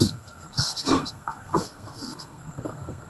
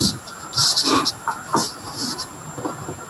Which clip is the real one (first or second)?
second